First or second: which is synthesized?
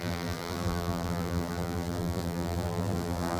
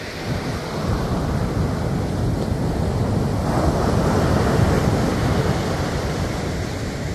first